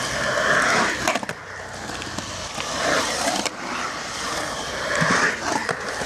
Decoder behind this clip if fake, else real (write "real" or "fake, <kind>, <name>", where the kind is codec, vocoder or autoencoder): real